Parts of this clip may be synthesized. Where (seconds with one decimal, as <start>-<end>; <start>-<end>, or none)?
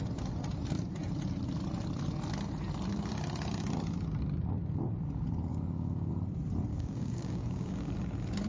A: 5.5-6.1; 6.7-7.9